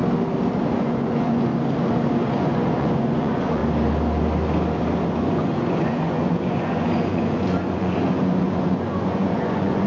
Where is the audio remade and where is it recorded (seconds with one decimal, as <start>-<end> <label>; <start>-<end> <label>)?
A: 0.0-0.8 recorded; 0.8-1.5 remade; 1.5-2.3 recorded; 2.3-3.6 remade; 3.6-5.2 recorded; 5.2-9.9 remade